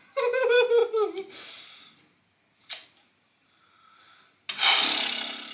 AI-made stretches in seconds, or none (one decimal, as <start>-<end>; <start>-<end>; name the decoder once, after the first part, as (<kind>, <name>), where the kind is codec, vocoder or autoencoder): none